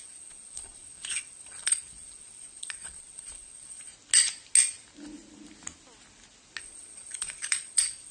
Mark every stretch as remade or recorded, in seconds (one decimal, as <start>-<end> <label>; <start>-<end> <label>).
0.0-3.9 remade; 3.9-6.6 recorded; 6.6-8.1 remade